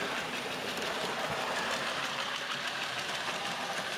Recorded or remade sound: remade